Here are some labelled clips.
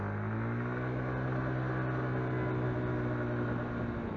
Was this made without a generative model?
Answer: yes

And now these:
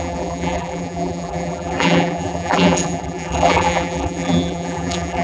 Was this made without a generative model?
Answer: no